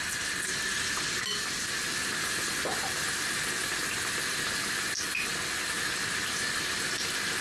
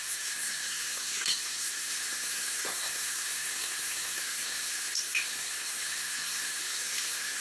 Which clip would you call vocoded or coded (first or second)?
second